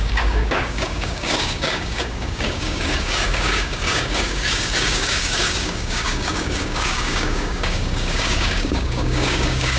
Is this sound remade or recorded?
remade